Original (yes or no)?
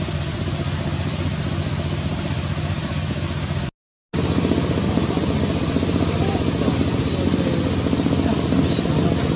yes